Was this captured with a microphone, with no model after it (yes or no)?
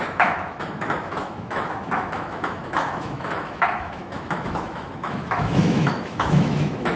no